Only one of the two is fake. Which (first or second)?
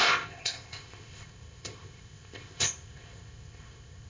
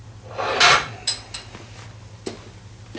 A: first